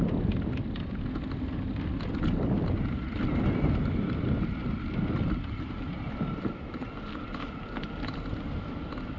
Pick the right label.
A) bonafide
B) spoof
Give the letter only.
A